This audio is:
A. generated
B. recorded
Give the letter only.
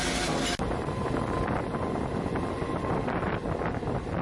B